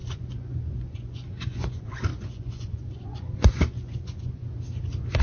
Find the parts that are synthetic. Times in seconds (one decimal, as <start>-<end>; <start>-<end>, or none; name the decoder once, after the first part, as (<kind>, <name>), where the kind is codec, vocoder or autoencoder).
0.0-4.4 (vocoder, Vocos)